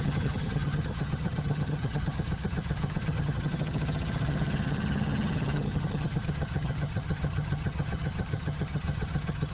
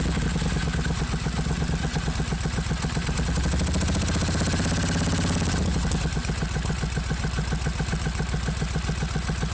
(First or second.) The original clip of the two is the second